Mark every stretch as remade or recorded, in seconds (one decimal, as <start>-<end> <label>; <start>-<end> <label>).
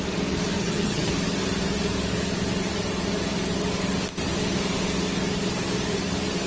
0.0-0.6 recorded; 0.6-1.1 remade; 1.1-6.5 recorded